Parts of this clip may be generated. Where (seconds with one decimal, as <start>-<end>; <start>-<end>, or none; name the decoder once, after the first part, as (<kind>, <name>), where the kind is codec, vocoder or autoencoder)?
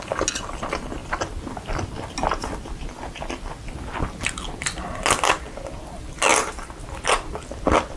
none